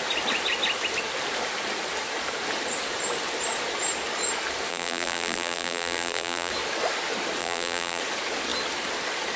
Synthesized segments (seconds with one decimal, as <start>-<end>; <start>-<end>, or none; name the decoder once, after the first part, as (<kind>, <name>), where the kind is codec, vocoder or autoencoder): 4.7-6.5 (vocoder, BigVGAN v2); 7.4-8.0